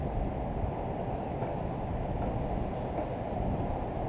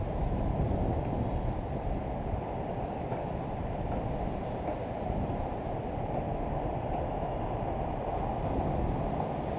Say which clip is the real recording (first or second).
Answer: first